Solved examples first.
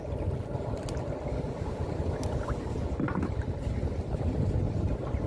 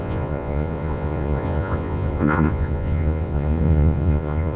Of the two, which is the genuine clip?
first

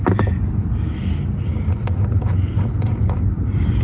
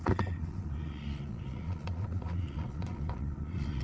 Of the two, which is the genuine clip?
first